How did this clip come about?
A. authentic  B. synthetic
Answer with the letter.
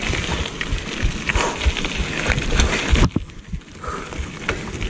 A